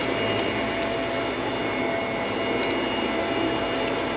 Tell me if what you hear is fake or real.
real